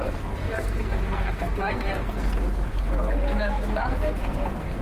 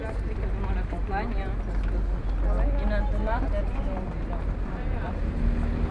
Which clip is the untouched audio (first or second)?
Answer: second